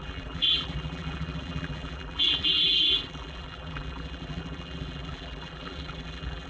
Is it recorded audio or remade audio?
remade